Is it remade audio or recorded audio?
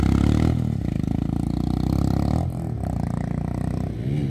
recorded